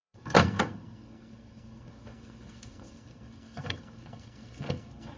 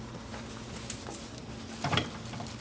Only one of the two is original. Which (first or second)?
second